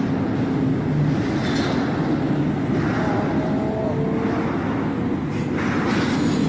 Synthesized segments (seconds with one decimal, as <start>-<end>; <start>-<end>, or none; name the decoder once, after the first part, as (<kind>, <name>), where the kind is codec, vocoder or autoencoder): none